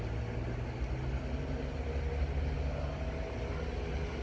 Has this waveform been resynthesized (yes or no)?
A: no